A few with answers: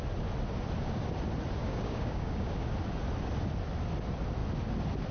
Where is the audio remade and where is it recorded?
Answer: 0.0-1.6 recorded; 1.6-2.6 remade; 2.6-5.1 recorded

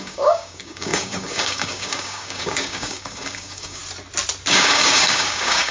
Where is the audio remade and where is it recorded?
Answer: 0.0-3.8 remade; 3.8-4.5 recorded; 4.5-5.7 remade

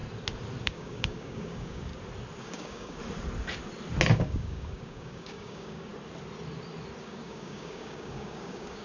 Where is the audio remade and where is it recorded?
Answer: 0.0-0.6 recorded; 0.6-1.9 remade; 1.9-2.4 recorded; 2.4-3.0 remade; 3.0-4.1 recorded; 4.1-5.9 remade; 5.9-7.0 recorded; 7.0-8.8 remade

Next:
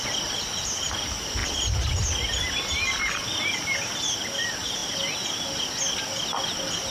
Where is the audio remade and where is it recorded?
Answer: 0.0-6.9 recorded

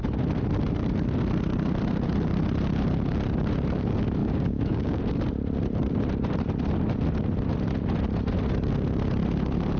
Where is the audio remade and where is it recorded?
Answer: 0.0-4.2 recorded; 4.2-5.0 remade; 5.0-9.8 recorded

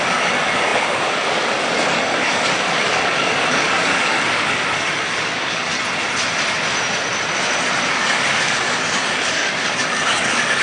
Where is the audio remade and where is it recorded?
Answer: 0.0-5.7 remade; 5.7-7.9 recorded; 7.9-10.6 remade